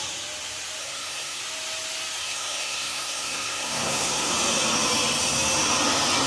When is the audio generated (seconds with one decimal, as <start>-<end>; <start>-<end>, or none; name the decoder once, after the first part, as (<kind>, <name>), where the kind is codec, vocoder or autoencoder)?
0.8-1.4 (codec, SNAC); 2.2-4.3